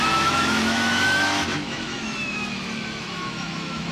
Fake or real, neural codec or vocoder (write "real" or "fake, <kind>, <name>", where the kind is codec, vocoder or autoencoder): fake, autoencoder, DAC-VAE